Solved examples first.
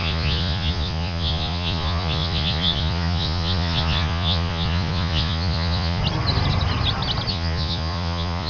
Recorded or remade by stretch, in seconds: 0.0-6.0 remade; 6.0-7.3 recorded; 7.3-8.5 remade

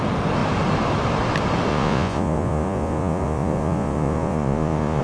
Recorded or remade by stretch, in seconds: 0.0-1.7 recorded; 1.7-5.0 remade

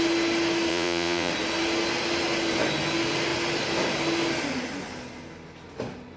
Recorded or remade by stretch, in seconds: 0.0-0.7 recorded; 0.7-1.3 remade; 1.3-6.2 recorded

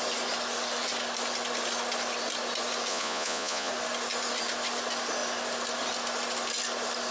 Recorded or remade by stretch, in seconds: 0.0-2.9 recorded; 2.9-3.7 remade; 3.7-7.1 recorded

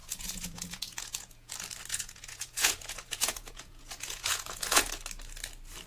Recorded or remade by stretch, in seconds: 0.0-1.5 remade; 1.5-1.9 recorded; 1.9-4.9 remade; 4.9-5.9 recorded

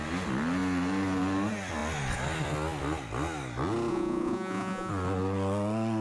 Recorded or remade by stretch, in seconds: 0.0-3.9 recorded; 3.9-4.9 remade; 4.9-6.0 recorded

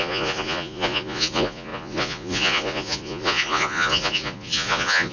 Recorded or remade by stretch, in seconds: 0.0-5.1 remade